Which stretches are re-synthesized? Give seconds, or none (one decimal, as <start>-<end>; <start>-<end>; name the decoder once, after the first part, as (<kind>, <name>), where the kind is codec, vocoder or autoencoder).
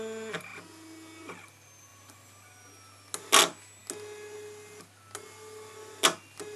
none